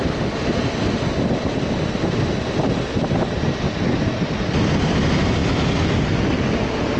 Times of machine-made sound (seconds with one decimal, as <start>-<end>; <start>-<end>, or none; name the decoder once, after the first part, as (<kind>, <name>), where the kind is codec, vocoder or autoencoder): none